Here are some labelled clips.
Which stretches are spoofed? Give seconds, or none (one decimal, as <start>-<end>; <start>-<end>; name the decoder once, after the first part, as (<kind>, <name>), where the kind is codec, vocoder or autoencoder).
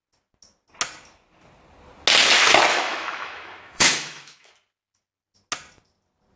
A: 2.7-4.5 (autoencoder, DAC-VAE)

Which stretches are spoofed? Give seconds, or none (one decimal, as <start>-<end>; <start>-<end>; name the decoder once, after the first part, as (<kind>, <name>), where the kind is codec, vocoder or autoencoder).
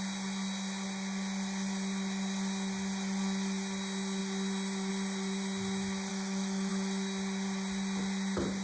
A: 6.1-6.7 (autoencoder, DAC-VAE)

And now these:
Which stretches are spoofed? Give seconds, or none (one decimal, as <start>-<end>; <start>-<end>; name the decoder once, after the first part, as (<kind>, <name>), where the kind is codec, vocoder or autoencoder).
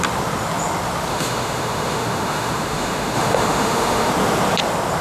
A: 1.1-4.1 (autoencoder, DAC-VAE)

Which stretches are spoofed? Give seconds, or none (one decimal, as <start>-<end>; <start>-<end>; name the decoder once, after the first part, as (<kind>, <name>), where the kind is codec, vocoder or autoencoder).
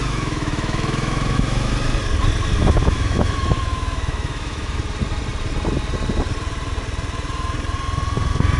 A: 0.0-1.7 (autoencoder, DAC-VAE); 2.6-4.8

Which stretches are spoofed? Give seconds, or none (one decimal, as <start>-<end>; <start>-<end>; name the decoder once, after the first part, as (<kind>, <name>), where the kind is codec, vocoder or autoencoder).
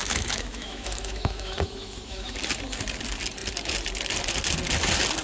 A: 0.0-2.4 (autoencoder, DAC-VAE)